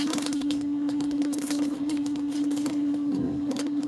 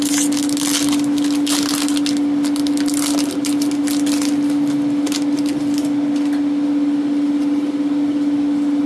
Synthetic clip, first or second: first